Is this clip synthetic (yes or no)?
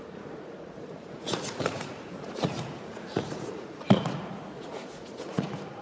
yes